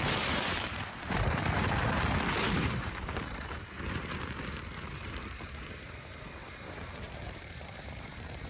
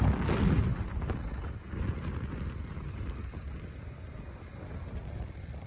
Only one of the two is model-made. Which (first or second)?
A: first